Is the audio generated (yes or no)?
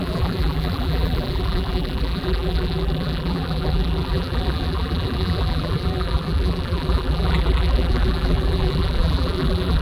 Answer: yes